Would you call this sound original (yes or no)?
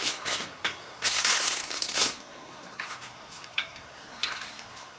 no